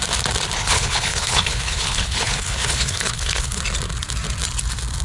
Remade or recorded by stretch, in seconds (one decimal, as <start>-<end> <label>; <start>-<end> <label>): 0.0-0.6 recorded; 0.6-3.6 remade; 3.6-5.0 recorded